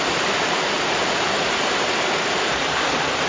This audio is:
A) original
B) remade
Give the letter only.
B